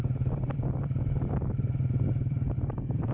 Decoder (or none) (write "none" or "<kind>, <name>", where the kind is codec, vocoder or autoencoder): vocoder, BigVGAN v2